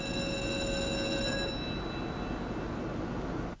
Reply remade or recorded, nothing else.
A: recorded